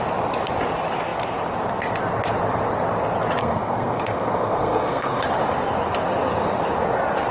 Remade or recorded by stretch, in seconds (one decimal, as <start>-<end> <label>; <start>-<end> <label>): 0.0-3.4 recorded; 3.4-5.2 remade; 5.2-7.3 recorded